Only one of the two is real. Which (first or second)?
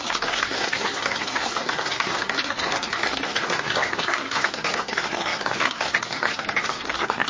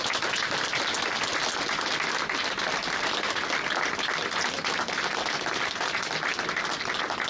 second